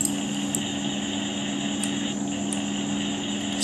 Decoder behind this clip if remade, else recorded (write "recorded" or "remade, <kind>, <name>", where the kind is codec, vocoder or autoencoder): recorded